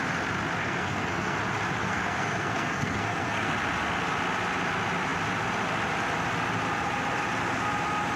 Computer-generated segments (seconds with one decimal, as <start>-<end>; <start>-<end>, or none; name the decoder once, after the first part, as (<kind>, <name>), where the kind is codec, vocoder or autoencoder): 0.6-1.4 (codec, SNAC); 1.8-3.5